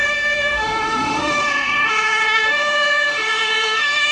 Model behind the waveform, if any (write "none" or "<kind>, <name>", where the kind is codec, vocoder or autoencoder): autoencoder, DAC-VAE